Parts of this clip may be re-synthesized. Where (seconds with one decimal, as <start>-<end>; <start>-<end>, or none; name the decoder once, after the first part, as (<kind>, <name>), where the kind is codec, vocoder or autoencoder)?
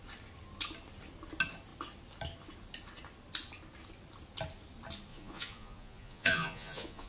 5.1-7.1 (vocoder, Vocos)